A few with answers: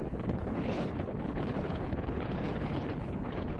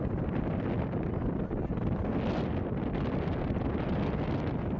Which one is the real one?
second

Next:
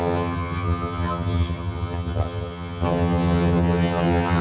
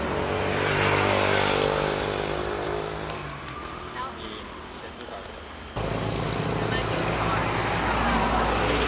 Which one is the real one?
second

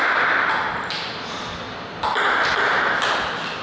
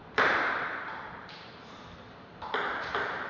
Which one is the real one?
first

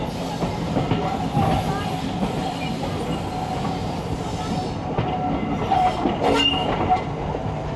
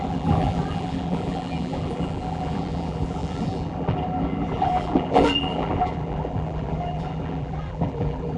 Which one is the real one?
first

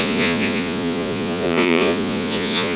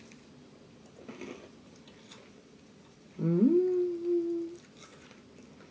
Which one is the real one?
second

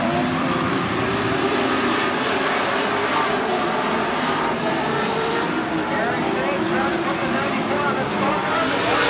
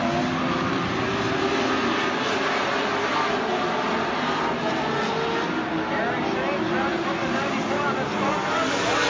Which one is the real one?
second